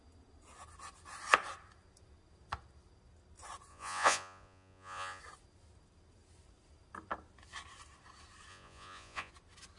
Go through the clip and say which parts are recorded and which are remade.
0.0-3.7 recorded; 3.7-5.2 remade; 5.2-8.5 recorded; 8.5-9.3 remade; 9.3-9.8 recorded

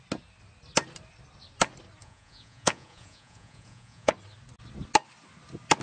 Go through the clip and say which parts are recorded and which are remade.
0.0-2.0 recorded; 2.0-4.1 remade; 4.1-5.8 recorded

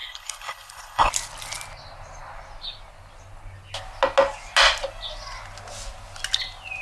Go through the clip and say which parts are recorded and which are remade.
0.0-1.1 remade; 1.1-6.8 recorded

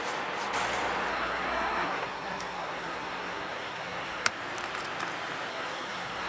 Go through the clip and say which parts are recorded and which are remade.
0.0-1.1 recorded; 1.1-4.3 remade; 4.3-5.5 recorded; 5.5-6.3 remade

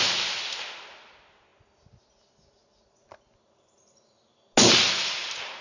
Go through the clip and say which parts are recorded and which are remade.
0.0-5.6 recorded

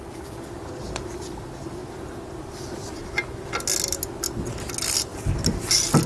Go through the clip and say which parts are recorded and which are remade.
0.0-6.1 recorded